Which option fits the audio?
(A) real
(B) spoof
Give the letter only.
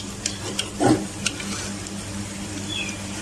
A